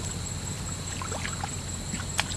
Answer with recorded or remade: recorded